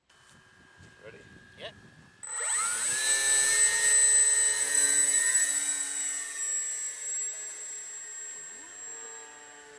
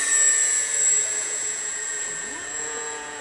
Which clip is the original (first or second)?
first